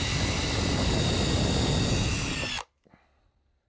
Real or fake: real